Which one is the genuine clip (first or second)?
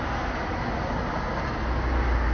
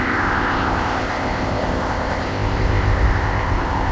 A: first